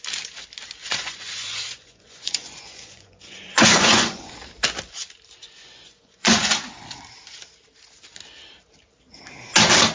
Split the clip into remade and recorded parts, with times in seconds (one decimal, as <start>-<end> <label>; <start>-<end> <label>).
0.0-0.8 recorded; 0.8-4.3 remade; 4.3-5.4 recorded; 5.4-6.5 remade; 6.5-9.9 recorded